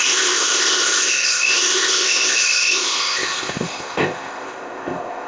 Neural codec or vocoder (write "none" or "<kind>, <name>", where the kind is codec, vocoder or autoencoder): codec, ZipCodec